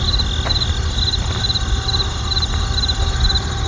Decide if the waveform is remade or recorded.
recorded